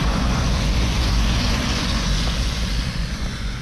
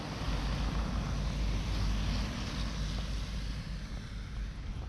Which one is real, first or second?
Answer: second